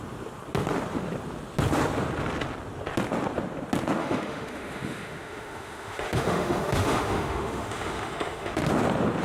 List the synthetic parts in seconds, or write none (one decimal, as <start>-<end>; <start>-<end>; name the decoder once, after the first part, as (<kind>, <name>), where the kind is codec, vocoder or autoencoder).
4.0-8.7 (autoencoder, DAC-VAE)

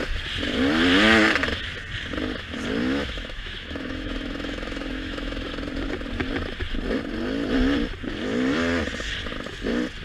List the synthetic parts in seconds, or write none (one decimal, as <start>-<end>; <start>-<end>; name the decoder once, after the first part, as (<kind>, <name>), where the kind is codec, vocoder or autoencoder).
2.8-5.5 (autoencoder, DAC-VAE)

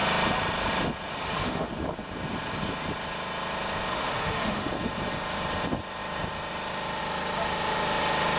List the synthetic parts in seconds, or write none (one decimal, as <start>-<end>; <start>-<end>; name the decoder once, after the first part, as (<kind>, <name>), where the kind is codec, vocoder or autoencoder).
1.1-1.7 (autoencoder, DAC-VAE); 3.9-4.7

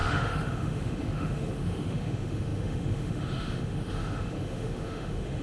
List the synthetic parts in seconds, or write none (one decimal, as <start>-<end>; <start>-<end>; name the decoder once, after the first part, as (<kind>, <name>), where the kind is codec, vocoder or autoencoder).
0.0-5.4 (autoencoder, DAC-VAE)

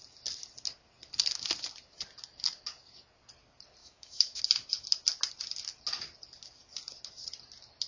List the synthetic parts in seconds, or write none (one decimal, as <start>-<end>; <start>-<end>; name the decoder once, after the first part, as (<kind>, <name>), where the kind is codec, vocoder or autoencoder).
3.8-4.4 (autoencoder, DAC-VAE)